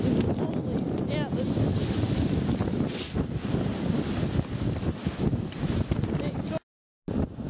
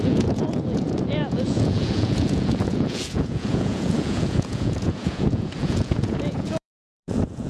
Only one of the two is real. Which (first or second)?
first